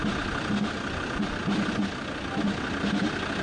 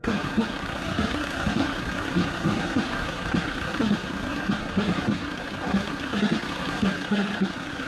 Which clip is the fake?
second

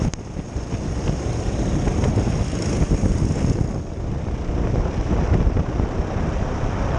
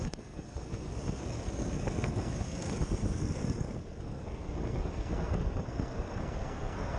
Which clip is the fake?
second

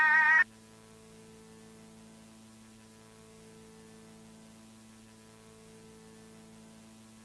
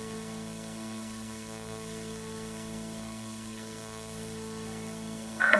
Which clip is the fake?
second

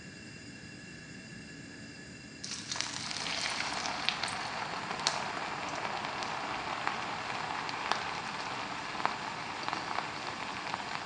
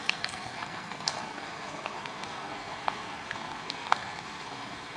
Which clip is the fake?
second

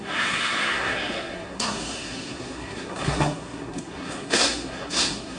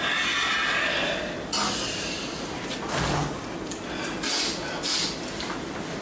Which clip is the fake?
first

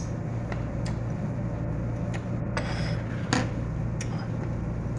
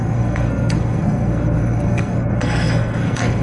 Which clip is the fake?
second